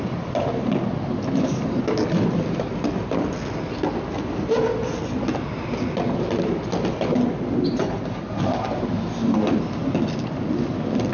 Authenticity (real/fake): real